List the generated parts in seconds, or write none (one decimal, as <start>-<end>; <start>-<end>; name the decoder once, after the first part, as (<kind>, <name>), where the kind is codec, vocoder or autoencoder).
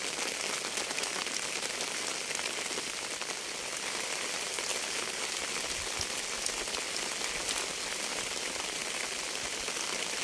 none